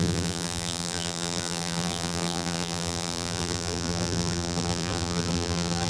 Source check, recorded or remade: remade